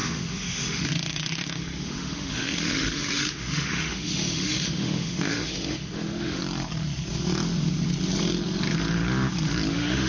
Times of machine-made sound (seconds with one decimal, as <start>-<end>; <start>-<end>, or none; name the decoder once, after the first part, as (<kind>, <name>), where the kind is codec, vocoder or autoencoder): 0.0-6.4 (autoencoder, DAC-VAE); 9.7-10.1